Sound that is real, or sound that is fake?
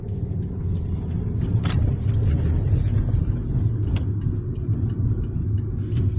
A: real